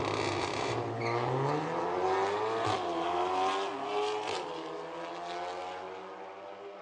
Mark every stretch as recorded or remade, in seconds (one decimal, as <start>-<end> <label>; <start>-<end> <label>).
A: 0.0-0.4 recorded; 0.4-1.0 remade; 1.0-6.8 recorded

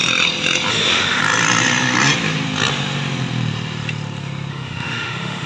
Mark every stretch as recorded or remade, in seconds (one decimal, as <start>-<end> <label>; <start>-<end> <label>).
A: 0.0-0.7 recorded; 0.7-1.2 remade; 1.2-4.5 recorded; 4.5-5.5 remade

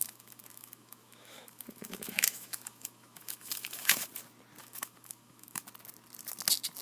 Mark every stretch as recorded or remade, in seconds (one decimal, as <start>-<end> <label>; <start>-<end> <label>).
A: 0.0-4.1 remade; 4.1-4.6 recorded; 4.6-5.6 remade; 5.6-6.8 recorded

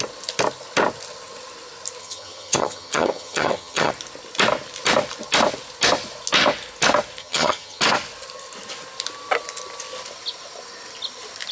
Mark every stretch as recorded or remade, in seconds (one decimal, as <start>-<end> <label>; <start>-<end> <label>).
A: 0.0-2.0 recorded; 2.0-3.9 remade; 3.9-7.2 recorded; 7.2-7.8 remade; 7.8-11.5 recorded

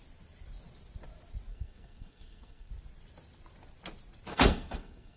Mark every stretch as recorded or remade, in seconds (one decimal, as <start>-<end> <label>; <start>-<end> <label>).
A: 0.0-1.5 recorded; 1.5-2.7 remade; 2.7-4.3 recorded; 4.3-5.2 remade

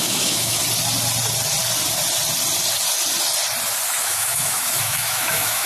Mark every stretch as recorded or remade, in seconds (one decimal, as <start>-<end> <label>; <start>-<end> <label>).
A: 0.0-0.6 remade; 0.6-4.0 recorded; 4.0-5.7 remade